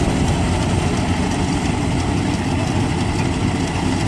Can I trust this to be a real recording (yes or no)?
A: yes